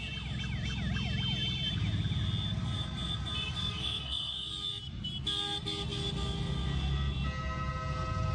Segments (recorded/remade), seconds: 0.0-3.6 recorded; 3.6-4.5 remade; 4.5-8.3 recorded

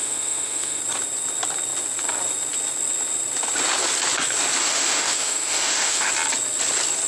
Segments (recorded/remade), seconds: 0.0-0.8 remade; 0.8-4.6 recorded; 4.6-6.1 remade; 6.1-7.1 recorded

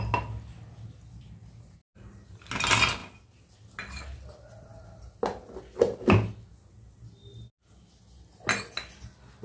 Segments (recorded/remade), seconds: 0.0-9.4 recorded

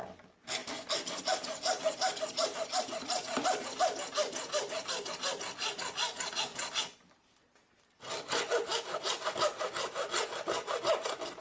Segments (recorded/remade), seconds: 0.0-0.6 recorded; 0.6-5.1 remade; 5.1-8.7 recorded; 8.7-9.4 remade; 9.4-11.4 recorded

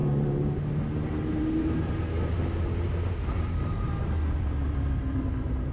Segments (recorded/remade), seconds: 0.0-5.7 recorded

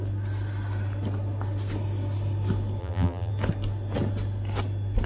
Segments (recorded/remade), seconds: 0.0-2.8 recorded; 2.8-3.3 remade; 3.3-5.1 recorded

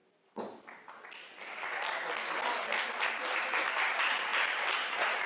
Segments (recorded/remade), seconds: 0.0-3.2 recorded; 3.2-5.3 remade

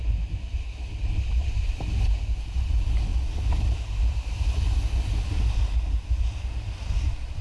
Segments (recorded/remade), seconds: 0.0-7.4 recorded